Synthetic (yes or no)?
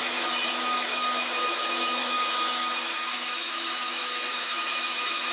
yes